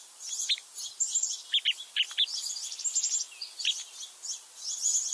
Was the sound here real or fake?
real